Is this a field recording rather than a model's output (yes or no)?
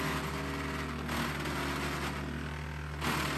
yes